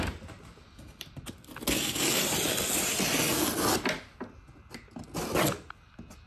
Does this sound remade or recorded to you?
recorded